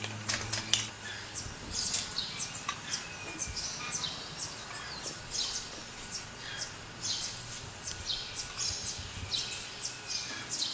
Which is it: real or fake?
real